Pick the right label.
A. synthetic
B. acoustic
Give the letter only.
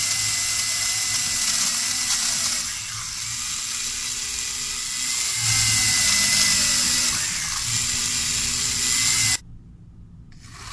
B